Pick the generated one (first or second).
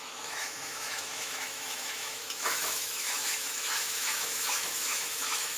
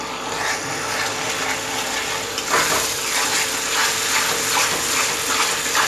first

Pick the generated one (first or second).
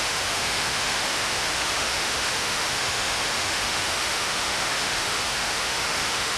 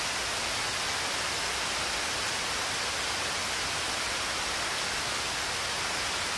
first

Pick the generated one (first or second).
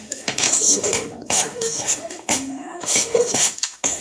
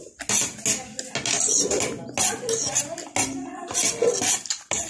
first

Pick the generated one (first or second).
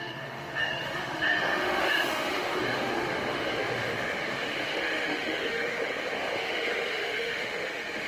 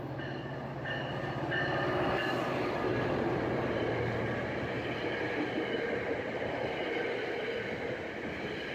first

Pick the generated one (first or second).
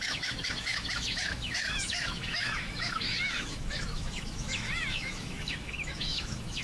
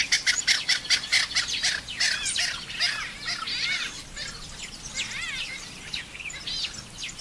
first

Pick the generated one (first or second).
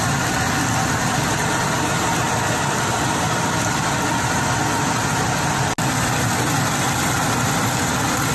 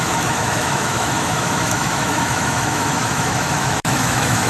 second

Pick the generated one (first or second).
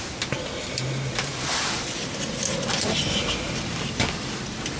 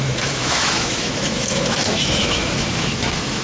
second